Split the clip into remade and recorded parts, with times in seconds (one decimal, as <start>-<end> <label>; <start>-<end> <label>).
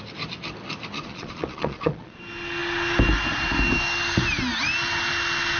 0.0-1.1 recorded; 1.1-2.2 remade; 2.2-5.6 recorded